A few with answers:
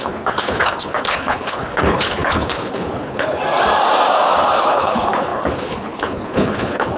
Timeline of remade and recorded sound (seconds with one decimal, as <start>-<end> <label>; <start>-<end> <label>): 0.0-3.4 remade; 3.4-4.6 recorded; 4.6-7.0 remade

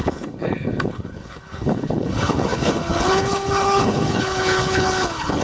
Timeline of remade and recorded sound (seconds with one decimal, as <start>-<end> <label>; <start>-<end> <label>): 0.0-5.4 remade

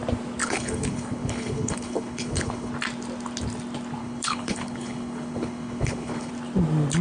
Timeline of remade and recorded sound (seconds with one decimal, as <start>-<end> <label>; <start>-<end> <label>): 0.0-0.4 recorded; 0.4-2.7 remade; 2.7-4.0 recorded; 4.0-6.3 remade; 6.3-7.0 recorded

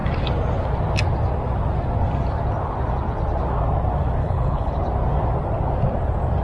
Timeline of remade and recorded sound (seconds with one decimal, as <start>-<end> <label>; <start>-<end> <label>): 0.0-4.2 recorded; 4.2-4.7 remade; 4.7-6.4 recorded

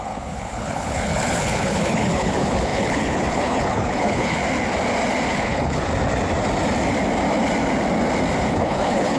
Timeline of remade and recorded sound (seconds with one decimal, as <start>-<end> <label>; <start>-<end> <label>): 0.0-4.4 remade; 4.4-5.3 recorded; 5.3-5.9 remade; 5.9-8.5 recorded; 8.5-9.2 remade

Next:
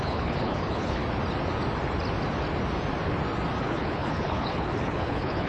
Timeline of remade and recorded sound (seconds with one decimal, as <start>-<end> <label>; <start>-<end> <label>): 0.0-1.0 remade; 1.0-3.6 recorded; 3.6-5.5 remade

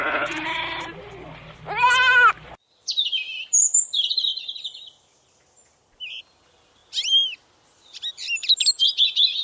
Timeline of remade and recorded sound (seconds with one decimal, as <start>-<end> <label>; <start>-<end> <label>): 0.0-9.4 recorded